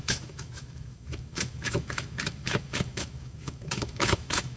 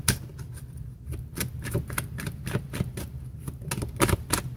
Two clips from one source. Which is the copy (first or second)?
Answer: first